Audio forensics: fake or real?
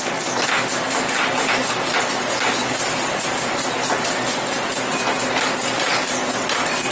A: real